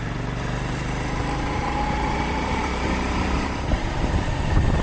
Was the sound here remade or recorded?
remade